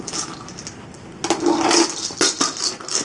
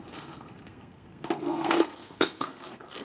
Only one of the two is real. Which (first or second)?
first